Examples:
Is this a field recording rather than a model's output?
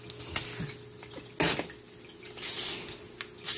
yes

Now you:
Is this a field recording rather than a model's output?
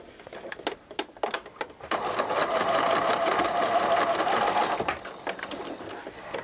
yes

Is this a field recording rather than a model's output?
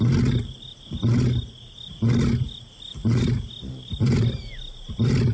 yes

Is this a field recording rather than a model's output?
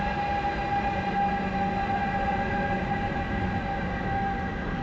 yes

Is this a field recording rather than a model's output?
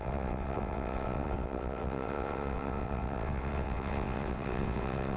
no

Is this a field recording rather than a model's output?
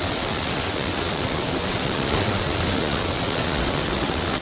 no